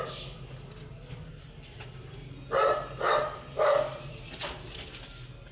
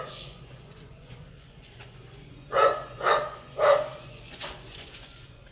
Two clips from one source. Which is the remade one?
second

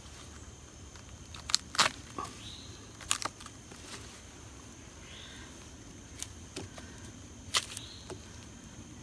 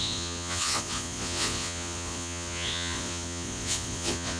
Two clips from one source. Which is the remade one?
second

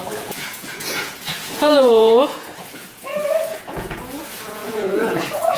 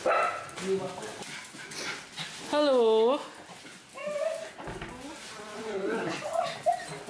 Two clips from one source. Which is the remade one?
first